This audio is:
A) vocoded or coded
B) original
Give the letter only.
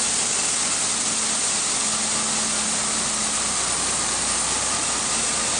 B